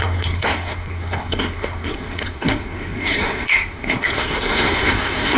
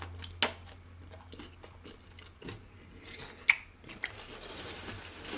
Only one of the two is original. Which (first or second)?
second